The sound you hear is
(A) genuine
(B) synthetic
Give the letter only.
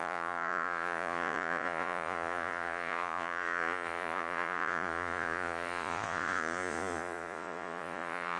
B